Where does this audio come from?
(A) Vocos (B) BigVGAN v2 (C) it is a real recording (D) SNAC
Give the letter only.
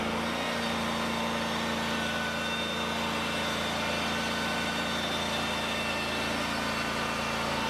C